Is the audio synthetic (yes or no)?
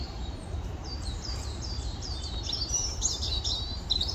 yes